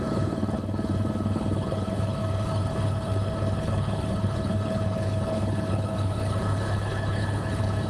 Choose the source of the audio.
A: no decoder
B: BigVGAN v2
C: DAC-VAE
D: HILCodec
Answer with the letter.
D